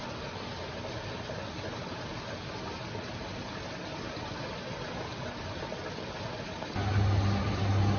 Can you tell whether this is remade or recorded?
recorded